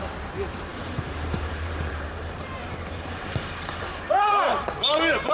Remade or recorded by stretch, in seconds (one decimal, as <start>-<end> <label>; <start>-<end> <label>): 0.0-0.7 recorded; 0.7-3.8 remade; 3.8-5.3 recorded